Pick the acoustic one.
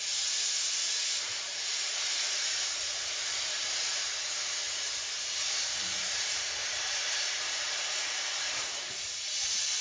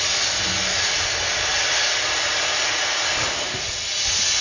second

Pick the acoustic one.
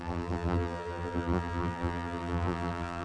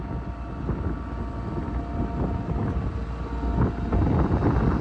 second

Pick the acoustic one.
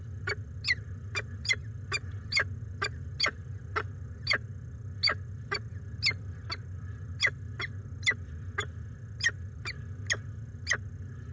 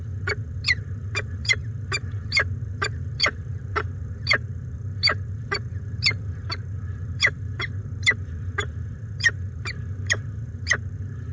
first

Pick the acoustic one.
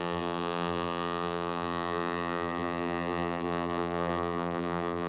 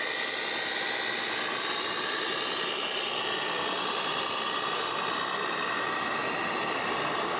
second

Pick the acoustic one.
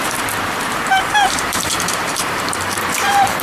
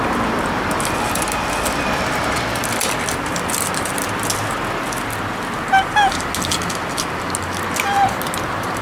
second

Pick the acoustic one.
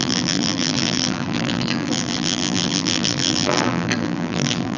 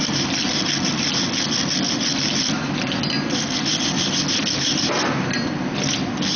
second